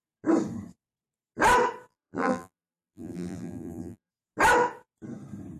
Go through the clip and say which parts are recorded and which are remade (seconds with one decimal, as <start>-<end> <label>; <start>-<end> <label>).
0.0-1.9 recorded; 1.9-4.1 remade; 4.1-5.6 recorded